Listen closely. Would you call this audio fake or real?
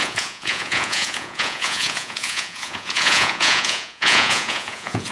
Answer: fake